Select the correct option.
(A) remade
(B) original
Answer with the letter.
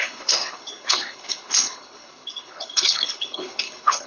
A